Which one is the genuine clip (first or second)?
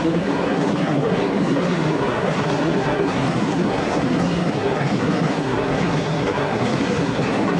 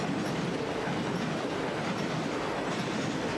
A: second